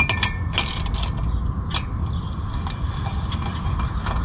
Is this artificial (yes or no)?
no